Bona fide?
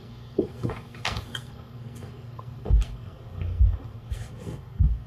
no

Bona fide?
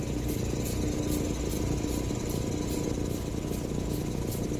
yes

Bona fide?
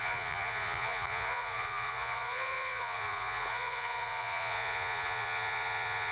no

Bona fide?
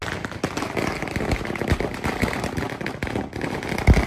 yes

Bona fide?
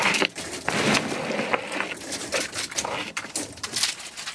no